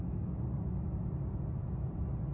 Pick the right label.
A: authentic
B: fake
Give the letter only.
A